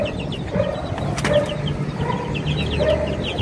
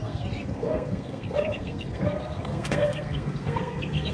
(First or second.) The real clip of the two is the first